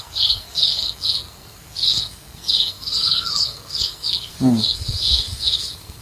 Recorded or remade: remade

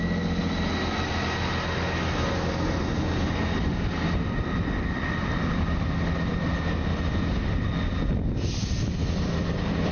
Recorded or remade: recorded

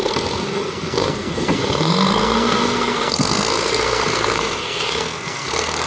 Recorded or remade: remade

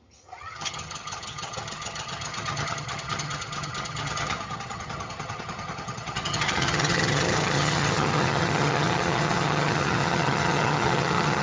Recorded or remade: remade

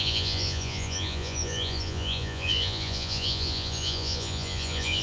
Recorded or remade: remade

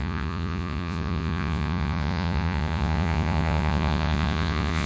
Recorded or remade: remade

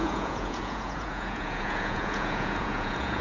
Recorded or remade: remade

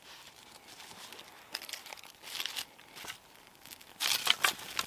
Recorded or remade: recorded